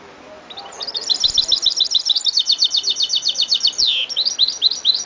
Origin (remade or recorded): recorded